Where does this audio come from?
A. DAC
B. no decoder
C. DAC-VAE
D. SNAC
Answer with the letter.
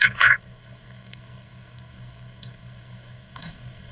D